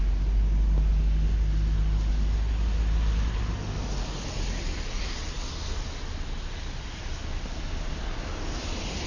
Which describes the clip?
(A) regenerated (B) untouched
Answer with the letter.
B